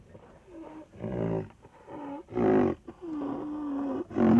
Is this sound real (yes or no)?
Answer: yes